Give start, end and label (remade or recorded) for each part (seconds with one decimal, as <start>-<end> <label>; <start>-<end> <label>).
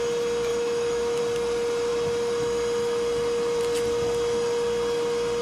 0.0-0.5 recorded; 0.5-1.2 remade; 1.2-5.4 recorded